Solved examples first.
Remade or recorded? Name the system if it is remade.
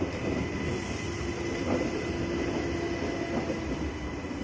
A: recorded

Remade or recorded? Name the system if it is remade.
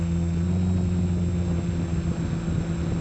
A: recorded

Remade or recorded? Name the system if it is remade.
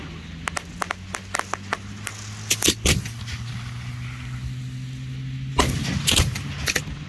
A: recorded